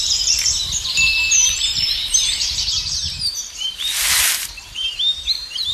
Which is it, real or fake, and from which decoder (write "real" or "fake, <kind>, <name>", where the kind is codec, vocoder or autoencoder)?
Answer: fake, vocoder, BigVGAN v2